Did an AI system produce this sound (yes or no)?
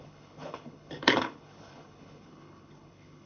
yes